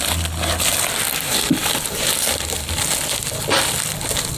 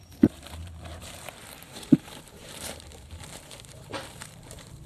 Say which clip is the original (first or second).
first